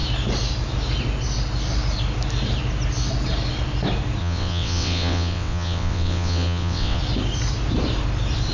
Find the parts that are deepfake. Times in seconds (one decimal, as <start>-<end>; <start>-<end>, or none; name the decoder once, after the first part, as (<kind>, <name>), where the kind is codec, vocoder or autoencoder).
4.2-7.0 (vocoder, WaveNeXt)